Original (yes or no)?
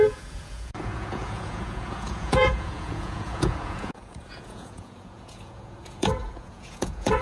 no